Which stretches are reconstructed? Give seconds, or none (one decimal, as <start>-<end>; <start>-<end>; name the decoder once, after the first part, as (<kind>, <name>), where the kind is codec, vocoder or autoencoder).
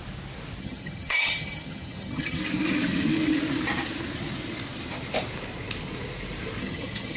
0.6-2.4 (vocoder, HiFi-GAN); 6.6-7.2